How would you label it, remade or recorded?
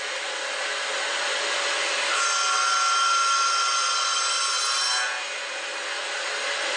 recorded